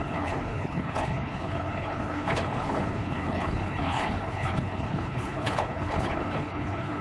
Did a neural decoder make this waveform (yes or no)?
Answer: yes